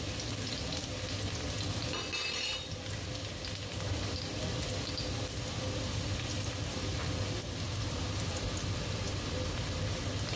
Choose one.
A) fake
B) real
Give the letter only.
B